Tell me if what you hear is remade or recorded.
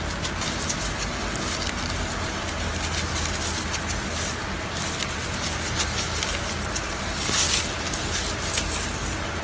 recorded